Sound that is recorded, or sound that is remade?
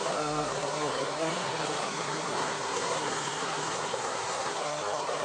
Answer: remade